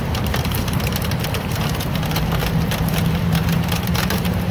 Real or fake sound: fake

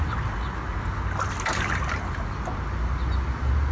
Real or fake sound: real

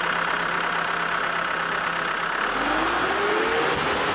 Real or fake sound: real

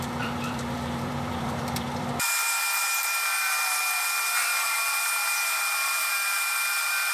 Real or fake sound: fake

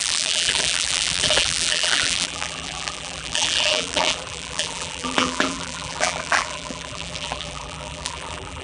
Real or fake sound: fake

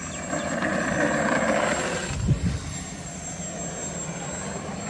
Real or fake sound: real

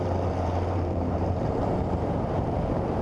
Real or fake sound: fake